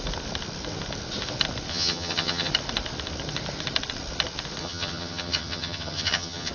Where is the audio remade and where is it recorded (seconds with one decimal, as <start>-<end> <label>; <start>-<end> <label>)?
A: 0.0-1.7 recorded; 1.7-2.5 remade; 2.5-4.6 recorded; 4.6-6.5 remade